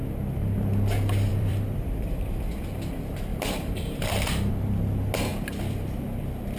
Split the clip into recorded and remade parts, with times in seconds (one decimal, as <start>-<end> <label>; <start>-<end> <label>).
0.0-1.3 recorded; 1.3-2.9 remade; 2.9-3.3 recorded; 3.3-4.5 remade; 4.5-6.6 recorded